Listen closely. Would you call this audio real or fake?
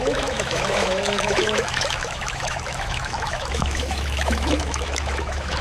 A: fake